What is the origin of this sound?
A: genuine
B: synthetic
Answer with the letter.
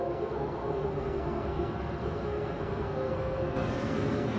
B